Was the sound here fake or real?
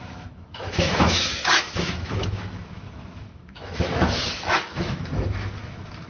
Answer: fake